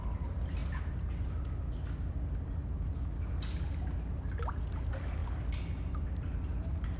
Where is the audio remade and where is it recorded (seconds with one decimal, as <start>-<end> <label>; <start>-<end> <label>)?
0.0-7.0 recorded